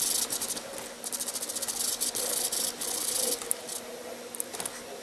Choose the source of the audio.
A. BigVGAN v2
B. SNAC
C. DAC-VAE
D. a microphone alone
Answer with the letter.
D